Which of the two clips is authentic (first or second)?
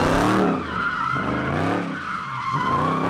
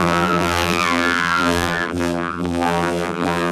first